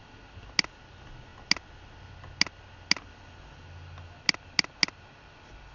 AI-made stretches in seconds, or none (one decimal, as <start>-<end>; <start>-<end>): none